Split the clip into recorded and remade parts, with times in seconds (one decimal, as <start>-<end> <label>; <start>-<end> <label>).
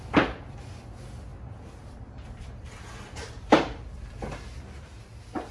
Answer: 0.0-1.3 recorded; 1.3-4.1 remade; 4.1-5.5 recorded